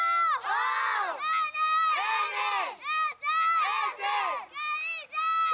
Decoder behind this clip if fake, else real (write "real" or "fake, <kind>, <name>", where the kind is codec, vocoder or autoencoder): real